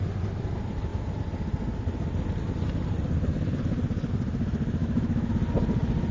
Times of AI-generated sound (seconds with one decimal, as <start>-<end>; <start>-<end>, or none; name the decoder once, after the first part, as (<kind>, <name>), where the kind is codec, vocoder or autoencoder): 4.8-5.3 (autoencoder, DAC-VAE)